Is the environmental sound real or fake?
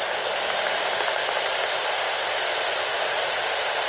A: real